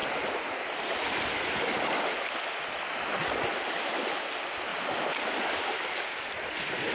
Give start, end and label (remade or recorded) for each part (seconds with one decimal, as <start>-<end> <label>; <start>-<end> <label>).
0.0-3.1 remade; 3.1-4.7 recorded; 4.7-6.9 remade